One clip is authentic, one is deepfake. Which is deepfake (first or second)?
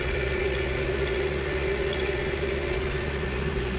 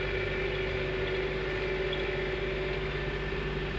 first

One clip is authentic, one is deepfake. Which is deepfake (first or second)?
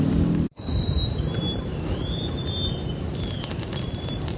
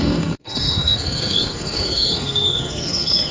second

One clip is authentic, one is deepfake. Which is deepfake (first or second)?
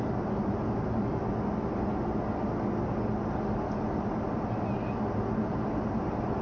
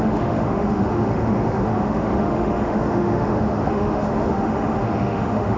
second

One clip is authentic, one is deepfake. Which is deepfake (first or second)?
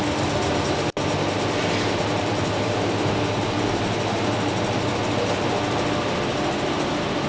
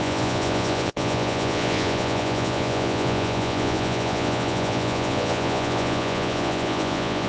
second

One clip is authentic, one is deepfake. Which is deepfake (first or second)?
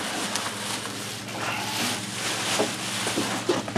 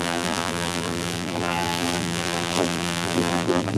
second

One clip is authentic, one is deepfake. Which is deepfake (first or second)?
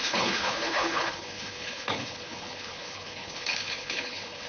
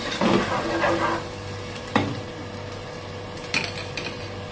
first